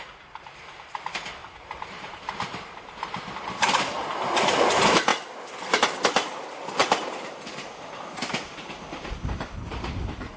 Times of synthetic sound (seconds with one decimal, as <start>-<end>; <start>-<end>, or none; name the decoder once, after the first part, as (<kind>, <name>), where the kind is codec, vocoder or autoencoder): 1.4-2.1 (vocoder, BigVGAN v2); 2.5-3.0; 6.8-10.4